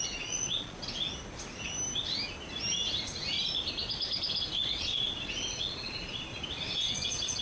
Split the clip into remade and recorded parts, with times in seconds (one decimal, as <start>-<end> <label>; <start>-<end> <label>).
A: 0.0-0.8 remade; 0.8-4.8 recorded; 4.8-6.3 remade; 6.3-6.9 recorded; 6.9-7.4 remade